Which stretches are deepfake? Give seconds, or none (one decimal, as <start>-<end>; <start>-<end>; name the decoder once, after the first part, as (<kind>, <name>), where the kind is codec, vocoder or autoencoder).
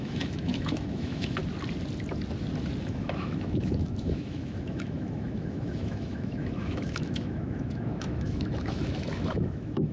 0.0-1.4 (autoencoder, DAC-VAE); 2.8-9.9